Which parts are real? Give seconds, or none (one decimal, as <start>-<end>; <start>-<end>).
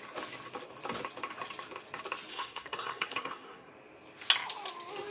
0.0-2.3; 3.7-5.1